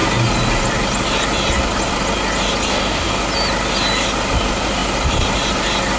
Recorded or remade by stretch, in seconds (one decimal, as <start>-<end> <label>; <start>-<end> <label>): 0.0-2.7 recorded; 2.7-3.2 remade; 3.2-6.0 recorded